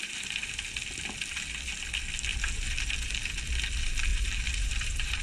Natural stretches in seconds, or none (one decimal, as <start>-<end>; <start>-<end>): 0.0-2.3; 3.3-4.1